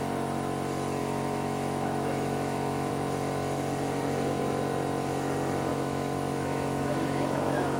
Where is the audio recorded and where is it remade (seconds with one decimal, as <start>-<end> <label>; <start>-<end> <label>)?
0.0-1.0 recorded; 1.0-2.9 remade; 2.9-5.7 recorded; 5.7-7.8 remade